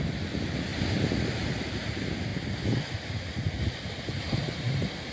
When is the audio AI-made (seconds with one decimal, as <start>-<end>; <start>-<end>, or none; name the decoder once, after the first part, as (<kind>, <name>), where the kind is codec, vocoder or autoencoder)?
0.7-1.7 (vocoder, BigVGAN v2)